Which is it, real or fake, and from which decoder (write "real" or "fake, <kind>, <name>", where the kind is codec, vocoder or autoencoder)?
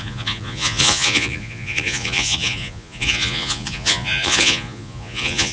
fake, vocoder, Vocos